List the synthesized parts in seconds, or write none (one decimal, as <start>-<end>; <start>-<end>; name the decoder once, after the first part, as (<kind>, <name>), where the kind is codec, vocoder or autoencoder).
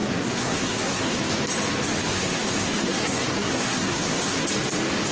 0.0-1.2 (codec, SNAC); 2.0-4.5